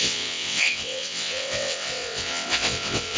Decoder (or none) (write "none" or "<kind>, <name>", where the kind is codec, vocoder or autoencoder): vocoder, WaveNeXt